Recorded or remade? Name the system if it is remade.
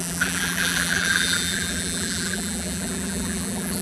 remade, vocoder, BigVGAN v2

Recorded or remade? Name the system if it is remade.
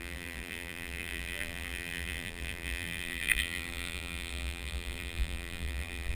remade, vocoder, BigVGAN v2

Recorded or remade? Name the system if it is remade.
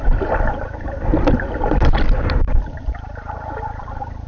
remade, vocoder, BigVGAN v2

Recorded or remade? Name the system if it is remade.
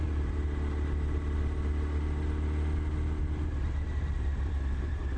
remade, vocoder, BigVGAN v2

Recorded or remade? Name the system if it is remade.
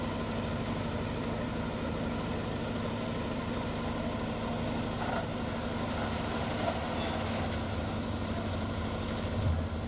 recorded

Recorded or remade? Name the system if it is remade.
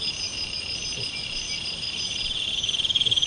remade, vocoder, BigVGAN v2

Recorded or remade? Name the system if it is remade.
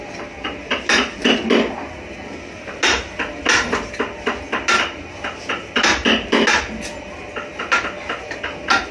recorded